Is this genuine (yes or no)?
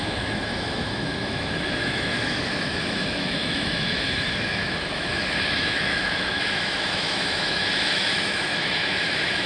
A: no